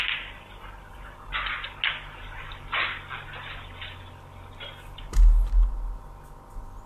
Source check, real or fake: real